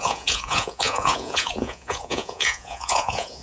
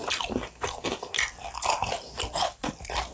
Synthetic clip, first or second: first